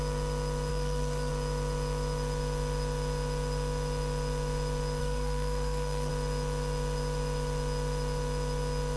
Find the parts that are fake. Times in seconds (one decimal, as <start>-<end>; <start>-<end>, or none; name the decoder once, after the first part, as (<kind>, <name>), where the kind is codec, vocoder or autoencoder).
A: 0.7-1.3 (codec, SNAC); 5.0-6.1